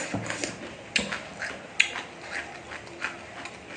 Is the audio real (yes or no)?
yes